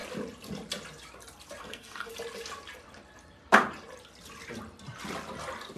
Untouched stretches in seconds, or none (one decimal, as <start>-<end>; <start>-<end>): 0.0-1.6; 2.1-5.8